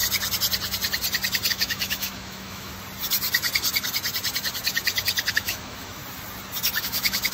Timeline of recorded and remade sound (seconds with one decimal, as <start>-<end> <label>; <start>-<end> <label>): 0.0-1.5 recorded; 1.5-2.7 remade; 2.7-5.3 recorded; 5.3-6.0 remade; 6.0-6.8 recorded; 6.8-7.3 remade